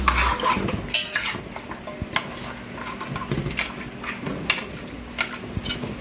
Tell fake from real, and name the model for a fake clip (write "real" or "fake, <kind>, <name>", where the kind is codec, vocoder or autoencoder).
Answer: real